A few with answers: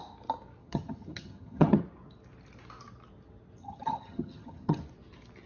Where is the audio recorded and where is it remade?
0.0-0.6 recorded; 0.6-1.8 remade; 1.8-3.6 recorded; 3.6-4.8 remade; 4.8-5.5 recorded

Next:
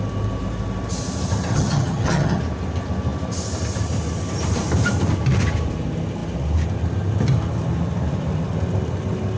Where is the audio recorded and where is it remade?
0.0-1.5 recorded; 1.5-2.4 remade; 2.4-9.4 recorded

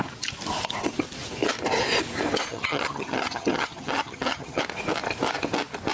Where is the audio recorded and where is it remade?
0.0-2.5 recorded; 2.5-4.6 remade; 4.6-5.9 recorded

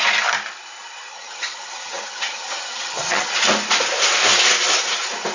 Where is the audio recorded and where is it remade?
0.0-1.1 recorded; 1.1-3.3 remade; 3.3-5.3 recorded

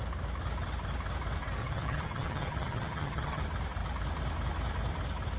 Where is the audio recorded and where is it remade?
0.0-1.6 recorded; 1.6-3.4 remade; 3.4-5.4 recorded

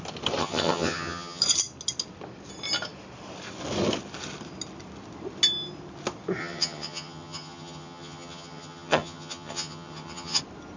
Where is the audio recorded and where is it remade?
0.0-0.4 recorded; 0.4-1.4 remade; 1.4-6.4 recorded; 6.4-10.4 remade; 10.4-10.8 recorded